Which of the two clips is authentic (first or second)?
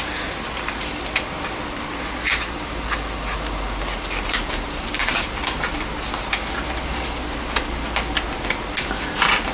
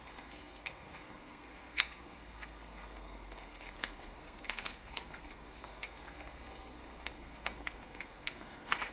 first